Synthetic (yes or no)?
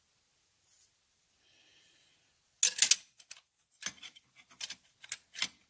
no